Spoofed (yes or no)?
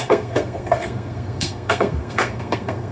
yes